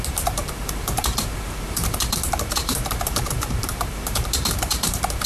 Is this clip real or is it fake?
fake